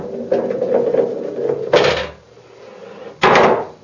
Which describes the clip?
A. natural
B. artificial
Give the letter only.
A